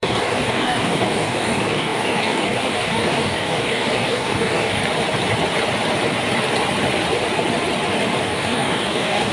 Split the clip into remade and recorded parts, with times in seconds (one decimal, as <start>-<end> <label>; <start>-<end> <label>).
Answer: 0.0-4.8 remade; 4.8-8.2 recorded; 8.2-9.3 remade